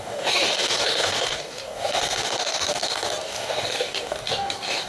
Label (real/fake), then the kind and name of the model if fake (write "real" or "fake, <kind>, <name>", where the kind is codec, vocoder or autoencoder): fake, codec, DAC